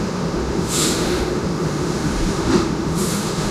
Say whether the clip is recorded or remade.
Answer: remade